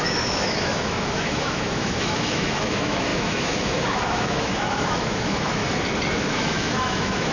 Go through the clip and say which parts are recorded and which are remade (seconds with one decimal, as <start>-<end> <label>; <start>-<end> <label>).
0.0-5.6 remade; 5.6-6.1 recorded; 6.1-7.3 remade